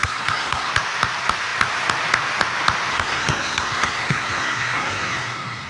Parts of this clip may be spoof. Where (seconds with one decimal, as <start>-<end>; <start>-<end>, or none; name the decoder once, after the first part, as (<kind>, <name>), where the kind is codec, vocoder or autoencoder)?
0.0-0.7 (codec, SNAC); 2.9-5.7